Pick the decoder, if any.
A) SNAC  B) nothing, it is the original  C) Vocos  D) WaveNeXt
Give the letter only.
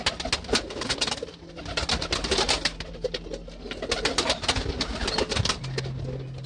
B